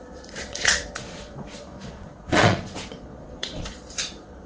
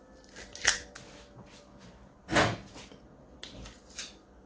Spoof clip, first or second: first